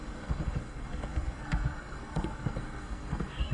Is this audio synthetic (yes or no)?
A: yes